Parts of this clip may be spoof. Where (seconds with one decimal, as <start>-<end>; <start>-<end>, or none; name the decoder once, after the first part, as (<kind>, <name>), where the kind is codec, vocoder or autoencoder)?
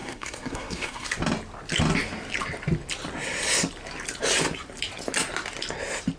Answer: 0.0-1.1 (codec, SNAC)